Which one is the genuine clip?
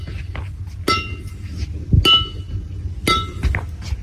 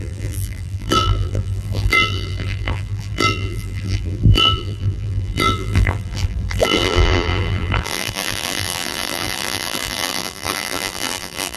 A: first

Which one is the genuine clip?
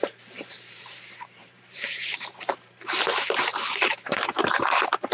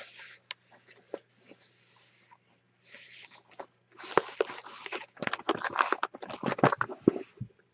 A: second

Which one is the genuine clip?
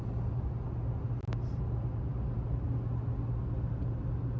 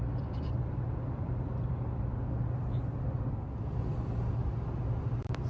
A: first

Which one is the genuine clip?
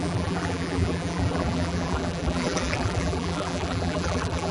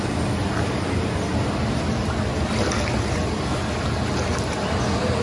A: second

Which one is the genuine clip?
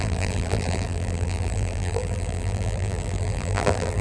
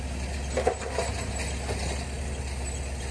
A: second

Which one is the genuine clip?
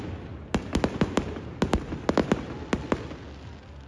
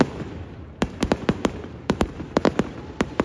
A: first